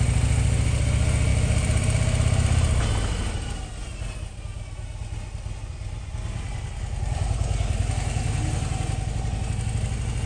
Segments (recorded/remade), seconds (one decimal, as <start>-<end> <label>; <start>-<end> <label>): 0.0-1.3 recorded; 1.3-3.9 remade; 3.9-5.6 recorded; 5.6-7.9 remade; 7.9-10.3 recorded